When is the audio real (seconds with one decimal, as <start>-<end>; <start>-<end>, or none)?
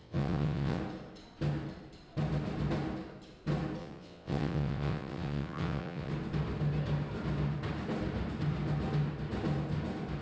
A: 0.8-3.8; 6.1-10.2